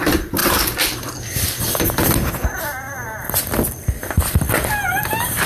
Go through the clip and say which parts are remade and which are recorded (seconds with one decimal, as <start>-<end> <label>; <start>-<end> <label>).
0.0-0.4 remade; 0.4-3.7 recorded; 3.7-5.5 remade